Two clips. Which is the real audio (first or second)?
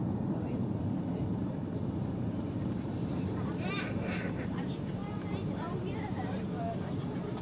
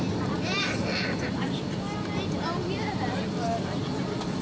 second